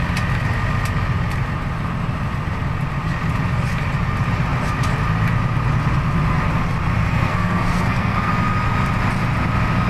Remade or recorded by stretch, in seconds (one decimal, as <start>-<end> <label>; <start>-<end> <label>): 0.0-7.1 recorded; 7.1-8.3 remade; 8.3-9.9 recorded